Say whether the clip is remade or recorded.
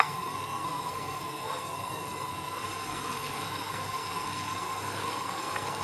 remade